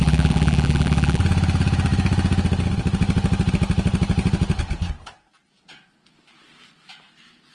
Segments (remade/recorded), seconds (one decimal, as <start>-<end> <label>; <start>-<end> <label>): 0.0-1.2 remade; 1.2-7.5 recorded